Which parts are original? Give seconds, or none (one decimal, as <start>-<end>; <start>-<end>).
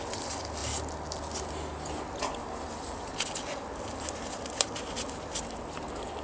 0.0-6.2